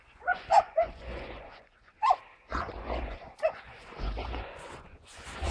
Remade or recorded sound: remade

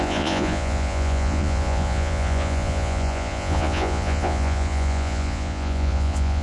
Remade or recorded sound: remade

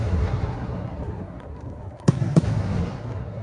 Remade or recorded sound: remade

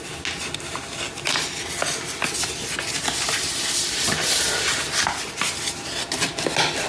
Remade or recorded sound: recorded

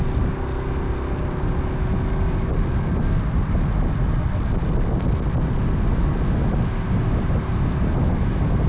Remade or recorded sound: recorded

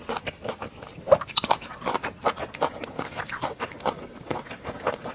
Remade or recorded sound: recorded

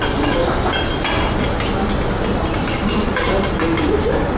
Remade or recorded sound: recorded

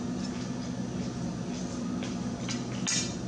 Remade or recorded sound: recorded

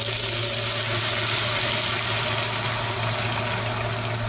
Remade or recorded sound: recorded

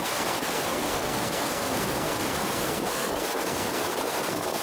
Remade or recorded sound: remade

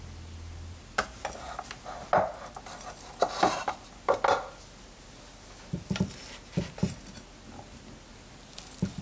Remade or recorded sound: recorded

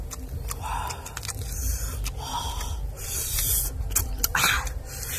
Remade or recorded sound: recorded